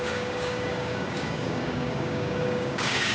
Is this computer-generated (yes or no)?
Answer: yes